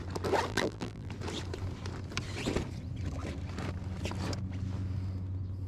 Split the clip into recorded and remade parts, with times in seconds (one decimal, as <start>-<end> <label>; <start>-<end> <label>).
0.0-0.5 recorded; 0.5-1.1 remade; 1.1-5.7 recorded